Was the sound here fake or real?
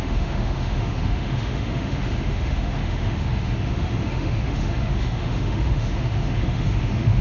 fake